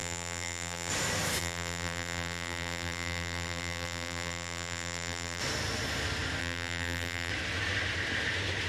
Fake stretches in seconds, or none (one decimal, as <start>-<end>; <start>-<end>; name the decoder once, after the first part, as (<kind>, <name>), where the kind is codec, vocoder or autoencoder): 0.0-0.9 (vocoder, BigVGAN v2); 1.4-5.4; 6.4-7.3